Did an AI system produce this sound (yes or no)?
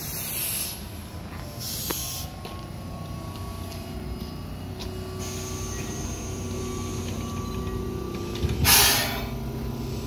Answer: no